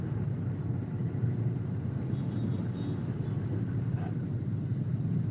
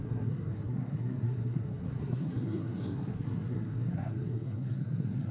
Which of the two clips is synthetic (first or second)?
second